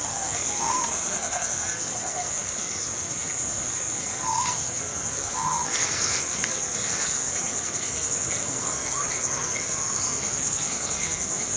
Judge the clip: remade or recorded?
remade